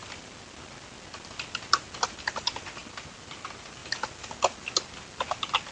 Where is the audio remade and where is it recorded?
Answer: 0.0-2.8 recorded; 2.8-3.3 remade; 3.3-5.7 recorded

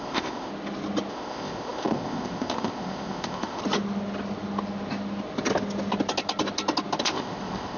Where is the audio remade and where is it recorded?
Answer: 0.0-0.5 remade; 0.5-1.1 recorded; 1.1-3.6 remade; 3.6-7.0 recorded; 7.0-7.8 remade

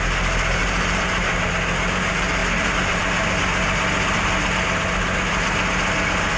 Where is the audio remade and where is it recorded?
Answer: 0.0-0.6 recorded; 0.6-1.5 remade; 1.5-6.4 recorded

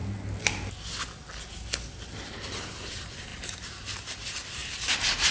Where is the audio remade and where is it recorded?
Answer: 0.0-2.9 recorded; 2.9-4.6 remade; 4.6-5.3 recorded